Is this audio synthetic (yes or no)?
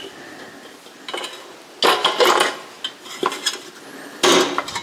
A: no